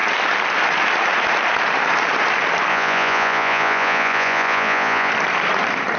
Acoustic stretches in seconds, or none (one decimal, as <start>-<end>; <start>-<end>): 0.0-2.7; 5.1-6.0